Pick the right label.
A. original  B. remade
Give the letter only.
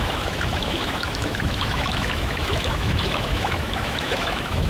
B